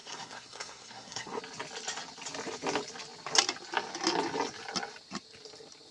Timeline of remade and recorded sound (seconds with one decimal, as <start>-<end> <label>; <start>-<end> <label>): 0.0-1.4 remade; 1.4-5.9 recorded